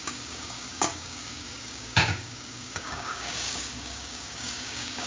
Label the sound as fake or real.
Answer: fake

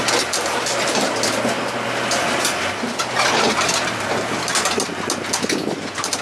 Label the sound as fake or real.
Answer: real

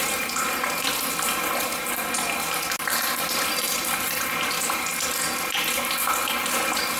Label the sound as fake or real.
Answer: real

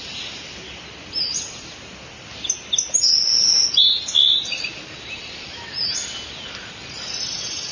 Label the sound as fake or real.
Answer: real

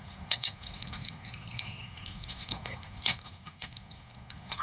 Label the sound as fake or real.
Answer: fake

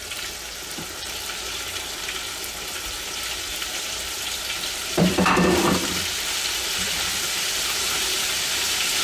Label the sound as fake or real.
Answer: fake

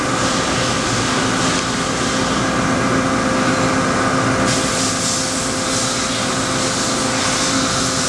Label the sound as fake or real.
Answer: real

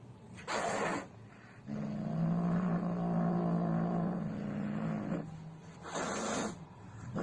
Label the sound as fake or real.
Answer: real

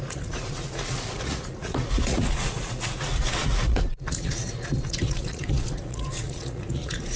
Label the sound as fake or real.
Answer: fake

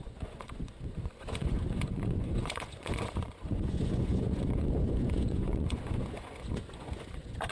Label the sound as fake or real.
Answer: fake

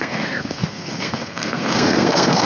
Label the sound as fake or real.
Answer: fake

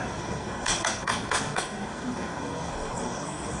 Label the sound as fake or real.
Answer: fake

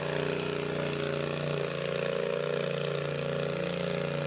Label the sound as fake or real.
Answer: real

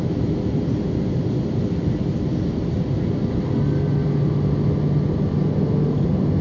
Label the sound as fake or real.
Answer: real